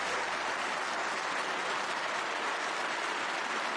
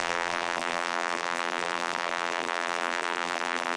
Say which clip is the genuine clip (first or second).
first